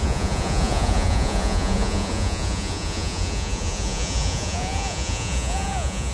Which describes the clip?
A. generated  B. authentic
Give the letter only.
A